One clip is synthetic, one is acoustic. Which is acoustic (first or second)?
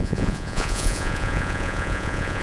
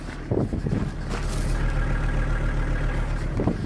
second